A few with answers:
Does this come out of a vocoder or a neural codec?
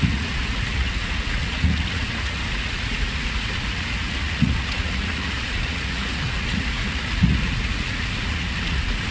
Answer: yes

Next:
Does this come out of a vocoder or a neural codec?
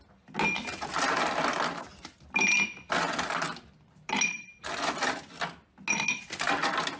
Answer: no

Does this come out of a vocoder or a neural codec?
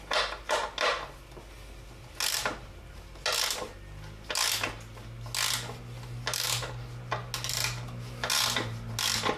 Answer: no